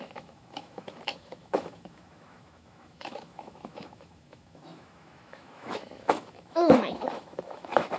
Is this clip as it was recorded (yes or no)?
no